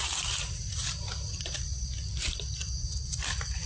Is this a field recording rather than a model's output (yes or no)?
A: yes